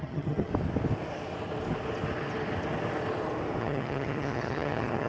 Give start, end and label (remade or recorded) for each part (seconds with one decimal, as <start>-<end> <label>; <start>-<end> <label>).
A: 0.0-0.5 remade; 0.5-3.6 recorded; 3.6-5.1 remade